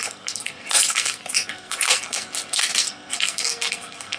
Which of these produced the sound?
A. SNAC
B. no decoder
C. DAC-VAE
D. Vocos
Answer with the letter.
A